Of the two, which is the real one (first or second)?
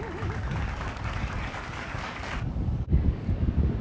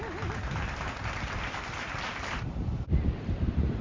second